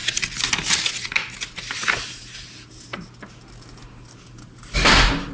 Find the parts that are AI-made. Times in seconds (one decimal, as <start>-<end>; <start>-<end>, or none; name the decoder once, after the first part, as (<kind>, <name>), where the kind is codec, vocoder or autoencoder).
none